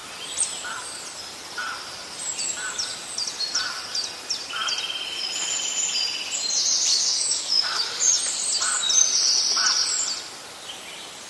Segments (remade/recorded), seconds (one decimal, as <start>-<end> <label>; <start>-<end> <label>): 0.0-6.9 recorded; 6.9-8.0 remade; 8.0-11.3 recorded